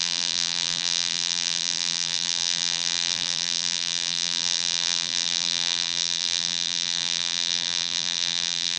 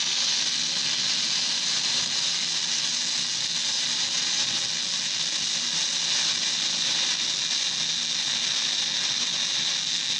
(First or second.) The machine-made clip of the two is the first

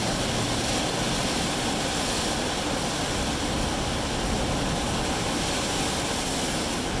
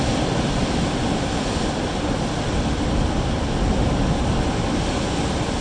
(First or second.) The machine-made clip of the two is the second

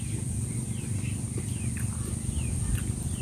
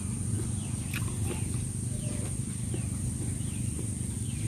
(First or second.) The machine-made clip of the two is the second